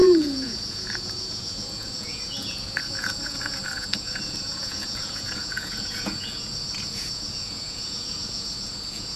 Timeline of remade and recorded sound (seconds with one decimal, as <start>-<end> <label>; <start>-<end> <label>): 0.0-9.2 remade